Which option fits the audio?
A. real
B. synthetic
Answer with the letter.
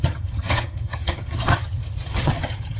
B